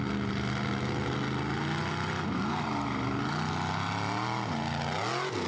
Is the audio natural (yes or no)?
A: yes